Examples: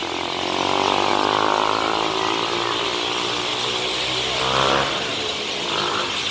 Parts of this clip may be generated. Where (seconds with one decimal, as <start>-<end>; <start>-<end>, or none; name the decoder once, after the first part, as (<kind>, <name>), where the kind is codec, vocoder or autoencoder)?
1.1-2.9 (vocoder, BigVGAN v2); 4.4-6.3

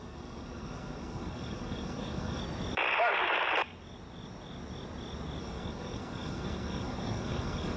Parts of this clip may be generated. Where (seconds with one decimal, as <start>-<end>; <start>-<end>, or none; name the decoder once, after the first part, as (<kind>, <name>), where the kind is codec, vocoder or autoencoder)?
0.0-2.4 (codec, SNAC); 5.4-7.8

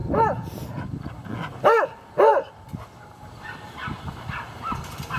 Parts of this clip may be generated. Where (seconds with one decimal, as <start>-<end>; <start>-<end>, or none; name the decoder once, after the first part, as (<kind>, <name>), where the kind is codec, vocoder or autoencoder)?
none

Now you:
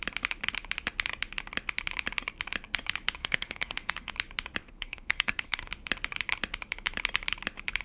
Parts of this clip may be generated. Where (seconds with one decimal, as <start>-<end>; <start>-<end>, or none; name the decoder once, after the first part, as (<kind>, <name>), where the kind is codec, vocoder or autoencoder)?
3.2-4.1 (codec, SNAC); 4.6-5.7